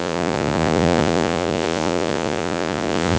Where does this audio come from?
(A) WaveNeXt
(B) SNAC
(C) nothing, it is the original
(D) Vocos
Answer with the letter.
D